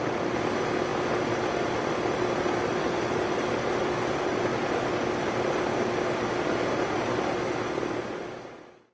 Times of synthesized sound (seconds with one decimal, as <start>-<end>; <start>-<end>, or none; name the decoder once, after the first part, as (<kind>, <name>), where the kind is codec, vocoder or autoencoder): none